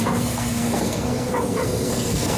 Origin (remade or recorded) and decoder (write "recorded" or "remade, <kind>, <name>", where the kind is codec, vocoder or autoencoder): remade, codec, SNAC